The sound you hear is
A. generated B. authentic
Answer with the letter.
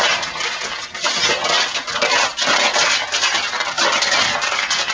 B